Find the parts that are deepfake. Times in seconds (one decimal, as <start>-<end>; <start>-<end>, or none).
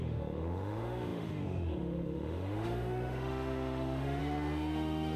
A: 0.0-5.2